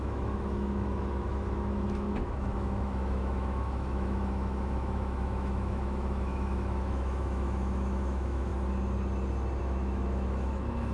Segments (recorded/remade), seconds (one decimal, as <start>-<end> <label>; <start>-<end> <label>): 0.0-8.5 remade; 8.5-9.6 recorded; 9.6-10.9 remade